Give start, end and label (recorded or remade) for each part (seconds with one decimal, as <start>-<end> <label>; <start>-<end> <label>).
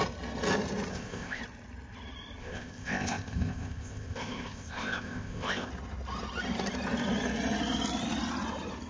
0.0-0.9 recorded; 0.9-1.4 remade; 1.4-2.4 recorded; 2.4-5.7 remade; 5.7-8.9 recorded